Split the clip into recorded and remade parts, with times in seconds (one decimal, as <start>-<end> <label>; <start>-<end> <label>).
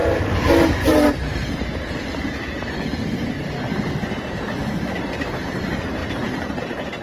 0.0-2.1 remade; 2.1-4.5 recorded; 4.5-7.0 remade